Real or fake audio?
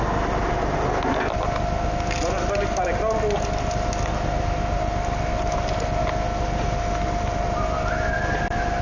real